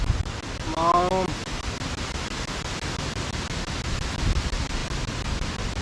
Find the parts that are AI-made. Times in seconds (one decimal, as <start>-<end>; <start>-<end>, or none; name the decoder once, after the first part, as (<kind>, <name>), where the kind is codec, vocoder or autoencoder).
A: none